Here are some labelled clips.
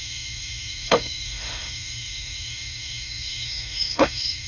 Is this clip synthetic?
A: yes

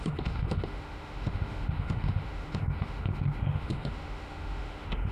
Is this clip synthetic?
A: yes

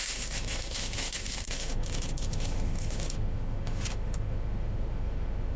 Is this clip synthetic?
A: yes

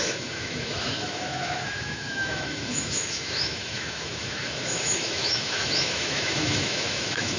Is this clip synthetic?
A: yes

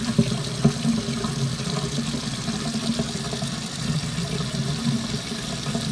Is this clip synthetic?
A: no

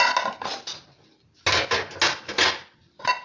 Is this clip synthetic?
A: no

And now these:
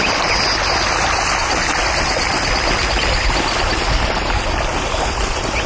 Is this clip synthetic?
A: no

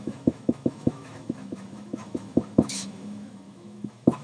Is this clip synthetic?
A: yes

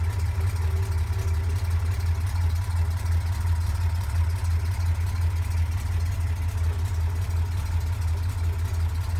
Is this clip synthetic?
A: no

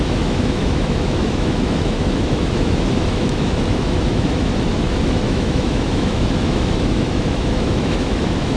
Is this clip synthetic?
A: yes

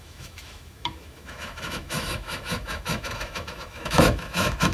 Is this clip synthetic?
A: yes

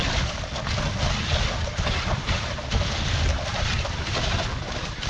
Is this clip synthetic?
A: no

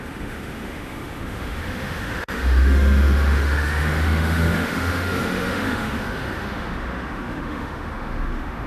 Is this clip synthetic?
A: yes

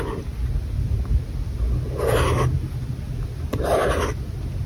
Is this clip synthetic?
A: no